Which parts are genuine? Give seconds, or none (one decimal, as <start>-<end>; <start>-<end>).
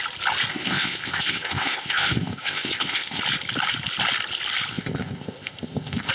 0.0-0.5; 3.2-4.7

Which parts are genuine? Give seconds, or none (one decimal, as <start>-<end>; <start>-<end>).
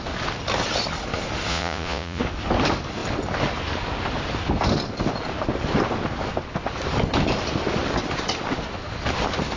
0.0-1.5; 2.2-9.6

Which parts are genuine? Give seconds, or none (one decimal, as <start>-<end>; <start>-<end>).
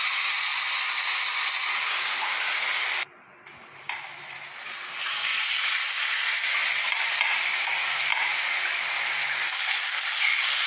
0.0-10.7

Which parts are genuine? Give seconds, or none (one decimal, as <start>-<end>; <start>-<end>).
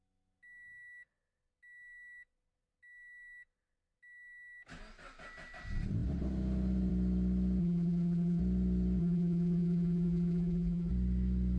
0.0-7.6; 8.4-9.0; 10.9-11.6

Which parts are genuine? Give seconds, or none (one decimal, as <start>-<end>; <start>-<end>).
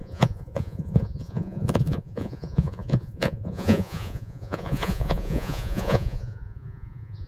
none